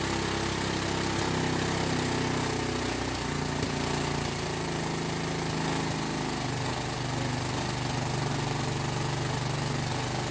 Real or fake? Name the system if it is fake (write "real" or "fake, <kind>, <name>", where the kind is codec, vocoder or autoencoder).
real